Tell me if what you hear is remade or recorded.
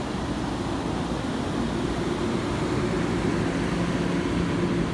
recorded